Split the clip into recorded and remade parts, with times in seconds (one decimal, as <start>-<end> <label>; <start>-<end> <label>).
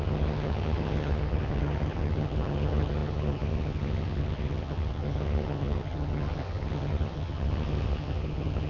0.0-8.7 remade